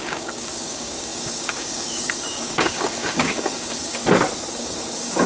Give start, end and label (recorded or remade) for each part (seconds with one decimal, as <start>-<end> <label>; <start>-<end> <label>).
0.0-4.0 remade; 4.0-4.5 recorded; 4.5-5.3 remade